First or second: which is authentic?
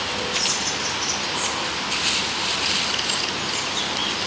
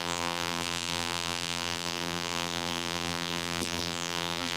first